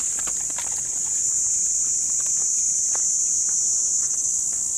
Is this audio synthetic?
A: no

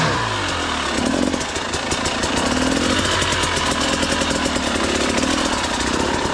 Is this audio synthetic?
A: no